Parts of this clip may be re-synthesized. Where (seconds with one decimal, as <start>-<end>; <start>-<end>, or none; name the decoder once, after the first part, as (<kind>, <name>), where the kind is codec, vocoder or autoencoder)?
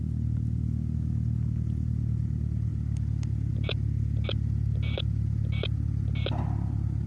none